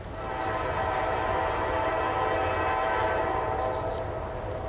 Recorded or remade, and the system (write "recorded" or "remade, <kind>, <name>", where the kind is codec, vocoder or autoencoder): recorded